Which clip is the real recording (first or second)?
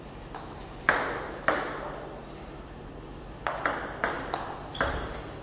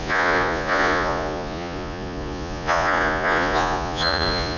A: first